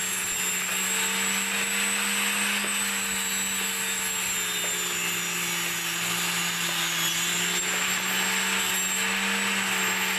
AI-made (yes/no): no